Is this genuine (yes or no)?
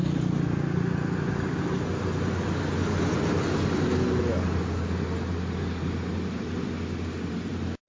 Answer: yes